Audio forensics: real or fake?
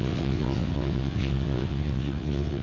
fake